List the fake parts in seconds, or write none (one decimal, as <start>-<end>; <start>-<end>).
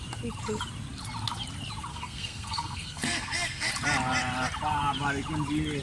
1.9-3.7